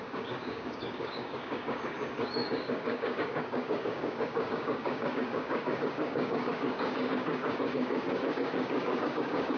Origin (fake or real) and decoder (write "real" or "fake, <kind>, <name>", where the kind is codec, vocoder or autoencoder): fake, codec, DAC